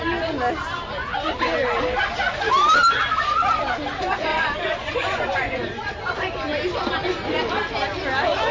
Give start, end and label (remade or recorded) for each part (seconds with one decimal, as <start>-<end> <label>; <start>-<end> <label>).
0.0-4.3 recorded; 4.3-5.9 remade; 5.9-8.5 recorded